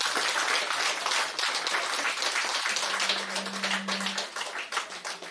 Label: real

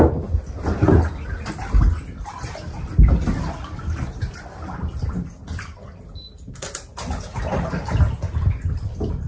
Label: real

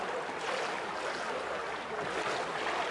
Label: real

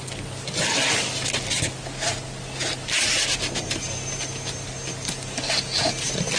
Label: real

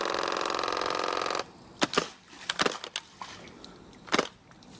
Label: real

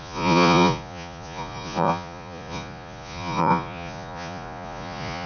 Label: fake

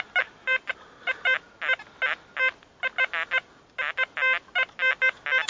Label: real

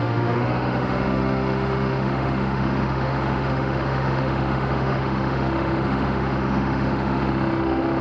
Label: fake